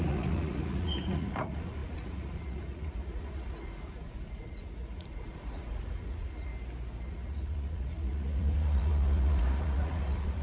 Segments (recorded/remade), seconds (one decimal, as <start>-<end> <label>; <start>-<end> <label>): 0.0-6.5 remade; 6.5-7.1 recorded; 7.1-10.4 remade